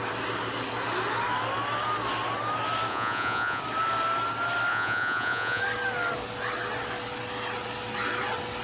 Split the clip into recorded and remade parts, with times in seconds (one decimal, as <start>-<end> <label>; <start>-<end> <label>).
0.0-2.9 recorded; 2.9-3.6 remade; 3.6-4.7 recorded; 4.7-5.6 remade; 5.6-8.6 recorded